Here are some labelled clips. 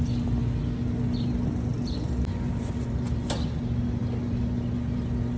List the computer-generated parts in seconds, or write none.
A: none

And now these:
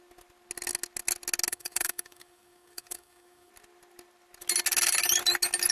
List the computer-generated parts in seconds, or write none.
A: 1.5-3.5 (codec, DAC)